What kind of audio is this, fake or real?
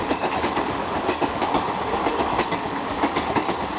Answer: fake